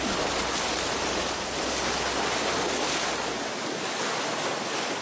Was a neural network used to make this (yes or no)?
no